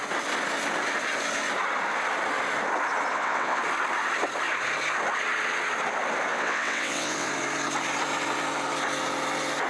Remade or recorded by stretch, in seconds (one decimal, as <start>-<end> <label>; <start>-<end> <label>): 0.0-3.1 recorded; 3.1-3.6 remade; 3.6-6.3 recorded; 6.3-7.3 remade; 7.3-9.7 recorded